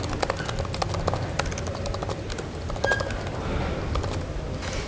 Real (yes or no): yes